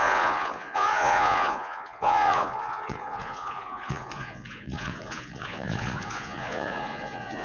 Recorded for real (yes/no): no